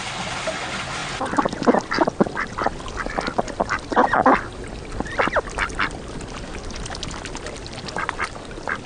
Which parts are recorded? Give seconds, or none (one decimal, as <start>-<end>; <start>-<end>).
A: 0.0-8.9